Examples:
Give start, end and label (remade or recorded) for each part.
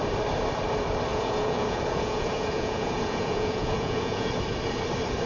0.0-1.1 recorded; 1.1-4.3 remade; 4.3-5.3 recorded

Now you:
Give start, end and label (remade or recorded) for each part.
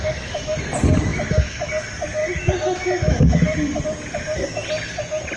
0.0-0.6 remade; 0.6-1.1 recorded; 1.1-1.7 remade; 1.7-2.2 recorded; 2.2-3.8 remade; 3.8-5.4 recorded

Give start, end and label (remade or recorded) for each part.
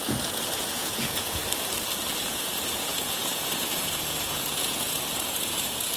0.0-1.4 remade; 1.4-2.2 recorded; 2.2-6.0 remade